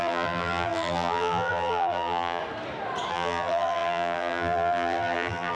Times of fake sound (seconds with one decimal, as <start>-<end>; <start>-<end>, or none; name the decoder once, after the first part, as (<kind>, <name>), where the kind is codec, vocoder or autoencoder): 0.0-2.4 (vocoder, BigVGAN v2); 3.1-5.5